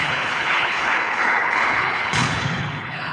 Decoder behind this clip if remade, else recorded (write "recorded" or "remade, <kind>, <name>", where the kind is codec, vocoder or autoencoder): remade, codec, HILCodec